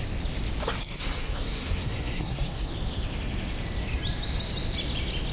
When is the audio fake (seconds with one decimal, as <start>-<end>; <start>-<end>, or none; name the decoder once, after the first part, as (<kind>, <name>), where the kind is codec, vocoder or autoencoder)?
0.8-2.7 (codec, SNAC)